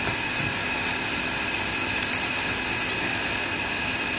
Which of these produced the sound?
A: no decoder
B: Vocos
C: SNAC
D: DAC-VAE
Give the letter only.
A